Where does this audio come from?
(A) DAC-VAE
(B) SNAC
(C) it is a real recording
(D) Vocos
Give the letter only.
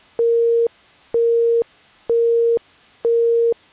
A